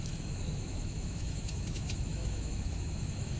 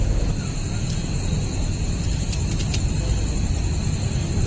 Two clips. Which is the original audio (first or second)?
second